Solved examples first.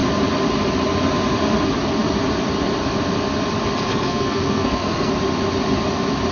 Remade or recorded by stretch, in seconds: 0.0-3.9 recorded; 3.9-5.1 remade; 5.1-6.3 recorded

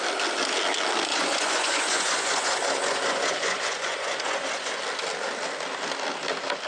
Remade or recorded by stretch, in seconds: 0.0-1.1 recorded; 1.1-4.8 remade; 4.8-6.7 recorded

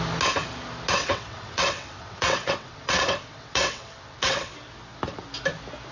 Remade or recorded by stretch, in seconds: 0.0-1.0 recorded; 1.0-4.5 remade; 4.5-5.9 recorded

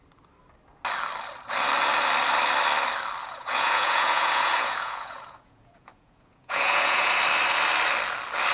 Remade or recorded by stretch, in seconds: 0.0-3.2 recorded; 3.2-7.2 remade; 7.2-8.5 recorded

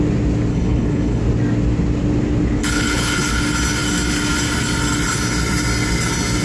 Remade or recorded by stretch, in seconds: 0.0-0.5 recorded; 0.5-1.2 remade; 1.2-2.6 recorded; 2.6-3.4 remade; 3.4-6.4 recorded

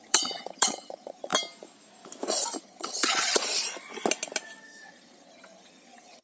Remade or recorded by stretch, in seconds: 0.0-1.3 remade; 1.3-2.6 recorded; 2.6-3.4 remade; 3.4-4.6 recorded; 4.6-6.2 remade

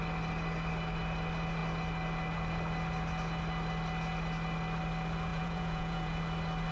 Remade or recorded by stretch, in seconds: 0.0-5.3 recorded; 5.3-6.2 remade; 6.2-6.7 recorded